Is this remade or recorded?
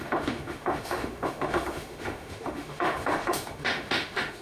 remade